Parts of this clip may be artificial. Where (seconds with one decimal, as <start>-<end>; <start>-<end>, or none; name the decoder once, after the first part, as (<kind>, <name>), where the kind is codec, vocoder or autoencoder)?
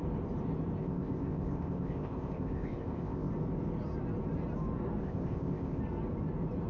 0.8-3.3 (codec, ZipCodec); 5.0-5.8